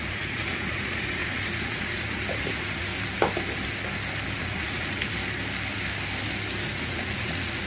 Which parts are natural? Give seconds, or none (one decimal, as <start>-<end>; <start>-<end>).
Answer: 2.9-4.4; 5.2-6.6

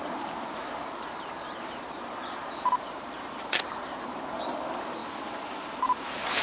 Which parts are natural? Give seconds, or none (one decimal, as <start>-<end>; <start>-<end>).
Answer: 5.0-5.7

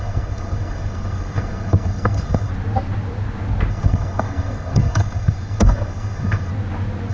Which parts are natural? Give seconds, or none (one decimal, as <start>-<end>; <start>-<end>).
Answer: 2.5-3.7; 6.5-7.1

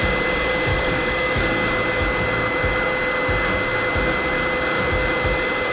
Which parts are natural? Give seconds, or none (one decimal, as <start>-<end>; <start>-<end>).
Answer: 0.0-0.7; 1.5-5.7

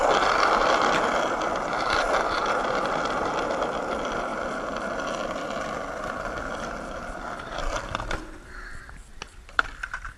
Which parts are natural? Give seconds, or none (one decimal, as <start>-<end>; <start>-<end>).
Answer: 4.3-9.4

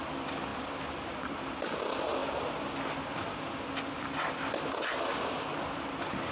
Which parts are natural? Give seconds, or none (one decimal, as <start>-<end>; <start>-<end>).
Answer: 2.2-5.1